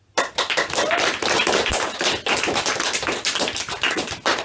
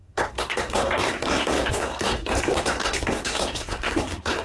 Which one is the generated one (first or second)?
second